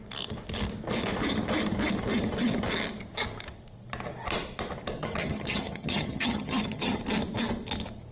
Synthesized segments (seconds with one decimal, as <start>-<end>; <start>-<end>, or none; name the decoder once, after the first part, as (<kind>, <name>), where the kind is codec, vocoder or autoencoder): 5.0-7.0 (vocoder, HiFi-GAN)